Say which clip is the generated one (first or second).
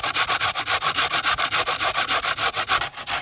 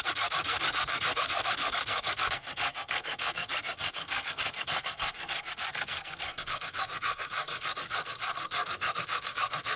second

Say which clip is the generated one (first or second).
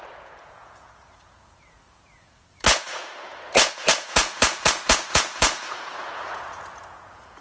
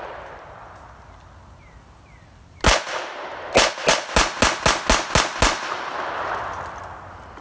first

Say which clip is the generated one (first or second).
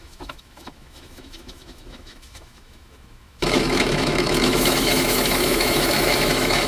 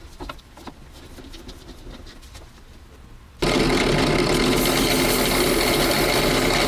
first